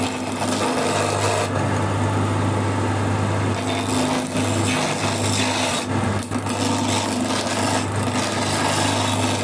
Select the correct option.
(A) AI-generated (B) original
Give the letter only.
B